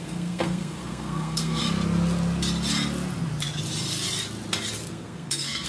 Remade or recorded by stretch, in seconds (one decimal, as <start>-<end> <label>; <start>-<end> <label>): 0.0-1.6 remade; 1.6-4.9 recorded; 4.9-5.7 remade